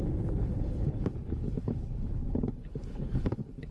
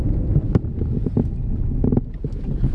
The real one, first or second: second